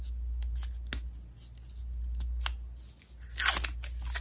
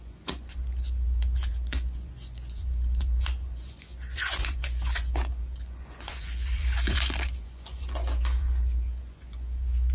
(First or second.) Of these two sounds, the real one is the first